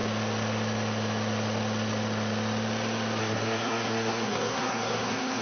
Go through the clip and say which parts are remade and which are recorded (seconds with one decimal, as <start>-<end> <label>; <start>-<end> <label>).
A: 0.0-3.2 recorded; 3.2-5.4 remade